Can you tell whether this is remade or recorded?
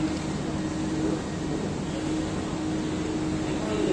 recorded